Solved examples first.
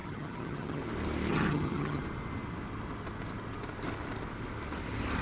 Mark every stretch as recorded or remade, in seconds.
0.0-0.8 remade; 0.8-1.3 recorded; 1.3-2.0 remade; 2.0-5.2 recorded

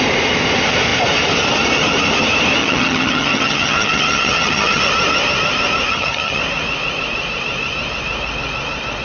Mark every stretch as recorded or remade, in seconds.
0.0-2.6 recorded; 2.6-4.8 remade; 4.8-5.9 recorded; 5.9-6.4 remade; 6.4-9.0 recorded

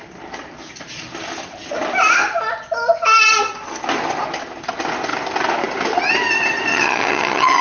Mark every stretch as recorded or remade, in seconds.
0.0-6.7 recorded; 6.7-7.6 remade

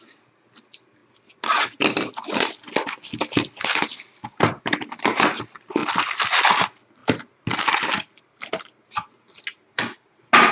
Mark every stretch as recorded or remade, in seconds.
0.0-10.5 recorded

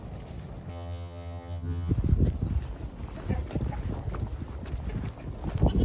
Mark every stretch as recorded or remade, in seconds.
0.0-0.7 recorded; 0.7-1.9 remade; 1.9-5.8 recorded

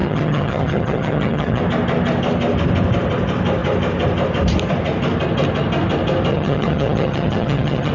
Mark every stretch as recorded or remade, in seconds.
0.0-1.6 remade; 1.6-6.3 recorded; 6.3-7.9 remade

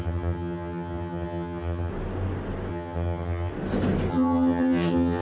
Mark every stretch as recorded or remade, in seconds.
0.0-1.9 remade; 1.9-2.7 recorded; 2.7-3.5 remade; 3.5-4.1 recorded; 4.1-5.2 remade